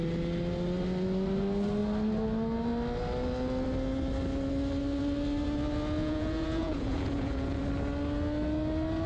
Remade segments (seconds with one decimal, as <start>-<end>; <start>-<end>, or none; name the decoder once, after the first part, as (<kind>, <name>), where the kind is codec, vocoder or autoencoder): 6.0-7.6 (vocoder, Vocos)